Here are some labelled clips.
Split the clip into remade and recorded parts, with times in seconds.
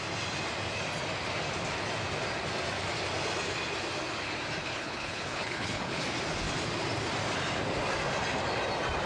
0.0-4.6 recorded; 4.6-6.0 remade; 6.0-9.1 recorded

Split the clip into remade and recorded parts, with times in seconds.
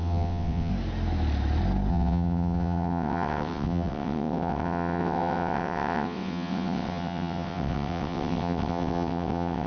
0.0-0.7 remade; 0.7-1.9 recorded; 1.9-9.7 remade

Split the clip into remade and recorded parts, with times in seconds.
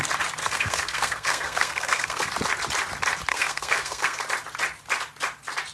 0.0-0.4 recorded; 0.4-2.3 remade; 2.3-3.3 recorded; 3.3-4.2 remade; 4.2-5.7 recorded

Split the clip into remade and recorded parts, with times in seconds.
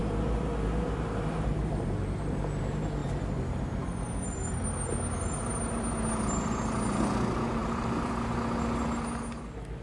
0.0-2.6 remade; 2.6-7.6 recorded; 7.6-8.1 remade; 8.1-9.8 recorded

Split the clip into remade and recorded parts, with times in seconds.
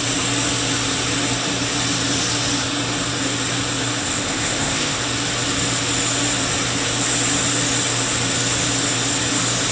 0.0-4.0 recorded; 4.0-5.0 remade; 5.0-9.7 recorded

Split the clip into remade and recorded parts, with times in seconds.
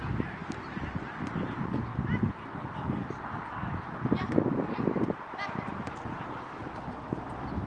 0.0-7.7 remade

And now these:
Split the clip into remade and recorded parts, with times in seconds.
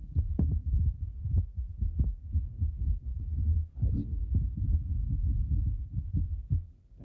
0.0-2.0 remade; 2.0-7.0 recorded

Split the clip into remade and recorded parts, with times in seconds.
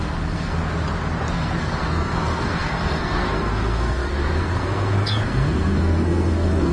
0.0-0.6 remade; 0.6-1.3 recorded; 1.3-6.7 remade